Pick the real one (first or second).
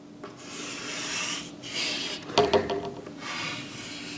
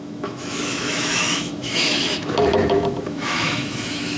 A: first